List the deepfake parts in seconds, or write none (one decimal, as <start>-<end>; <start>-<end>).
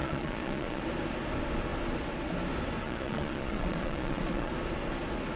0.0-0.8; 2.8-4.5